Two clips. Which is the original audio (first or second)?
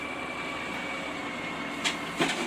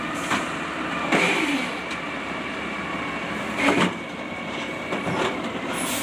first